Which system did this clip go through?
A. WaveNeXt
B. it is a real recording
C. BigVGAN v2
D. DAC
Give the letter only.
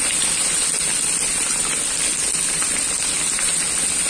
B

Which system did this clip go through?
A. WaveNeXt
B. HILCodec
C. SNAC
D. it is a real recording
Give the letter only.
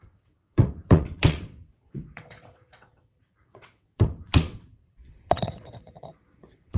A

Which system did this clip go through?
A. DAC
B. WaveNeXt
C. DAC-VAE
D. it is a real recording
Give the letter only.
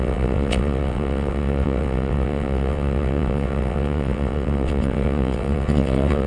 B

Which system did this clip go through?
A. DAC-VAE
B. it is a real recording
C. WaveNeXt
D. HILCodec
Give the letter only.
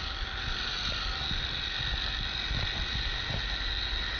B